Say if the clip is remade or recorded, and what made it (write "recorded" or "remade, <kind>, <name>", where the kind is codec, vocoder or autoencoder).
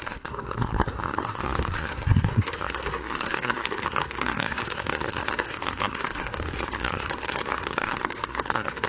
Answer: remade, codec, SNAC